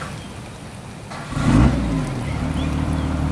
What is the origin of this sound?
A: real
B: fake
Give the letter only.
A